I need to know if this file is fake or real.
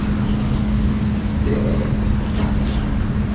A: real